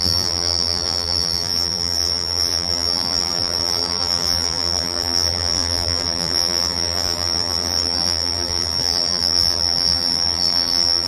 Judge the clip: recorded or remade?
remade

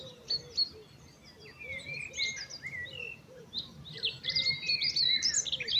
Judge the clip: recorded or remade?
recorded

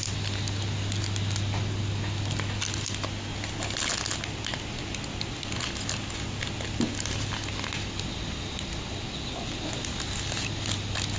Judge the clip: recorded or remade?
recorded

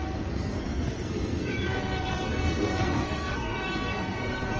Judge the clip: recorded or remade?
remade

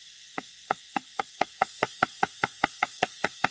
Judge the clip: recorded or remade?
remade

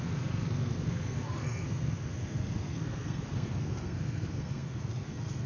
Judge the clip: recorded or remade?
remade